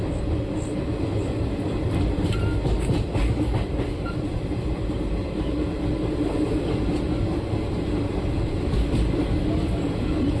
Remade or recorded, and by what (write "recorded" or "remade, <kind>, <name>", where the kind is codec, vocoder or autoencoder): recorded